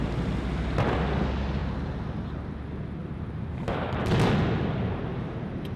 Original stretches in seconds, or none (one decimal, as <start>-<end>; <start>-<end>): 0.0-1.6; 2.6-3.0; 4.1-5.1